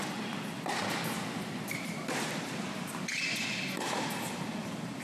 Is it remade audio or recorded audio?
recorded